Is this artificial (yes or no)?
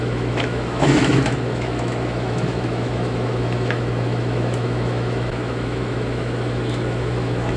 yes